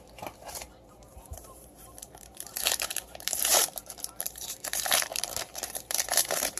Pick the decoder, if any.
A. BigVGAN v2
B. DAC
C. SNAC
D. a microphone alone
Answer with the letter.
A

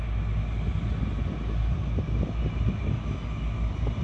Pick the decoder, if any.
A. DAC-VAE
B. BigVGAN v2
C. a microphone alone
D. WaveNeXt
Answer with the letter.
C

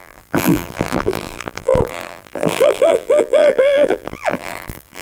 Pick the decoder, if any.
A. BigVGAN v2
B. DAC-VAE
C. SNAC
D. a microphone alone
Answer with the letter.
A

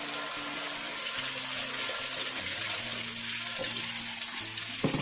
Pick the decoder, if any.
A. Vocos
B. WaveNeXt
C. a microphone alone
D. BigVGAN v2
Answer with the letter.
C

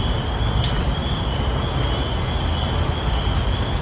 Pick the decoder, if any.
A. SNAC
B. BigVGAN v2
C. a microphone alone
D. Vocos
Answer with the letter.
C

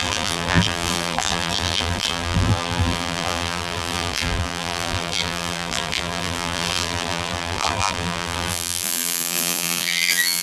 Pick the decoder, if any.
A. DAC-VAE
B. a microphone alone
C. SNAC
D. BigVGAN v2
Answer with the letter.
D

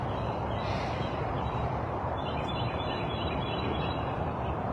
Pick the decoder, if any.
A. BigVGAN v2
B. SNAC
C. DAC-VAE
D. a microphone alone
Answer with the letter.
A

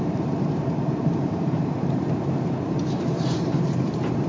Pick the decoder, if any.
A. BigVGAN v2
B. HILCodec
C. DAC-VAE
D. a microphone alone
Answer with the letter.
A